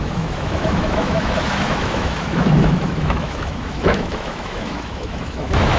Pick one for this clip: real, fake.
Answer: fake